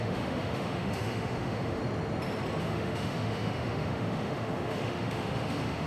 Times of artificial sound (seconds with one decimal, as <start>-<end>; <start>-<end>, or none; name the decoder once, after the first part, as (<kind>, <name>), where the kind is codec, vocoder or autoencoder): 0.0-1.8 (autoencoder, DAC-VAE); 2.6-5.9